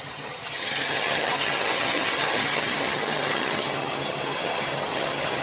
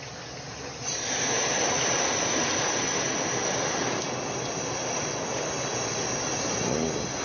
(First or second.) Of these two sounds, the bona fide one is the second